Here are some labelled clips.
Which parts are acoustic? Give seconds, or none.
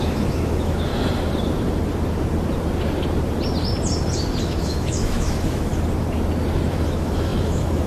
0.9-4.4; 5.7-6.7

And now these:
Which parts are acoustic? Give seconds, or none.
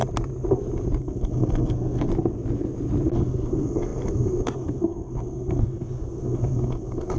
0.0-1.0; 2.1-3.1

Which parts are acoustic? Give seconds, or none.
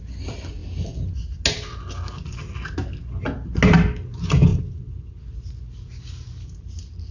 0.0-7.1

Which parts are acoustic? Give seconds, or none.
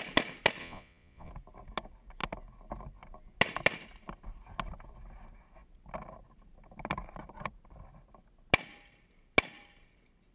0.0-0.6; 1.3-10.3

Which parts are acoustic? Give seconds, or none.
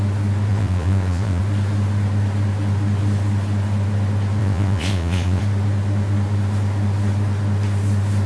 0.0-0.5; 1.4-4.4; 5.4-8.3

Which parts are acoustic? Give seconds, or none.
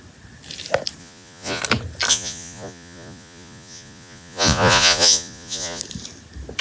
0.0-1.0; 1.6-2.1; 5.8-6.6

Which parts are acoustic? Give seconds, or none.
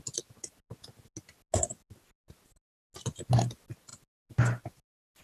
0.0-5.2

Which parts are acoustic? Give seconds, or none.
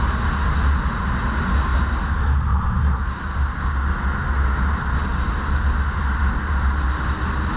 0.0-7.6